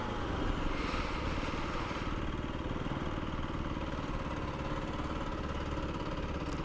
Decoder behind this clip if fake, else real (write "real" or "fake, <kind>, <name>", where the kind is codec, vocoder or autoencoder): real